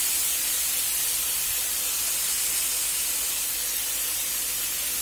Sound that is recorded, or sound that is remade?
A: recorded